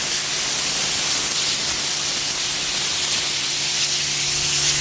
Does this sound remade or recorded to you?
recorded